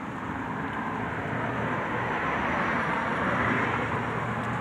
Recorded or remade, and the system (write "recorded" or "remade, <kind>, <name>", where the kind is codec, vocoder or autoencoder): recorded